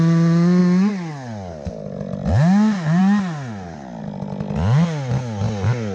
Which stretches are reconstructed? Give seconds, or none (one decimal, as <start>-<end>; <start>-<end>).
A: none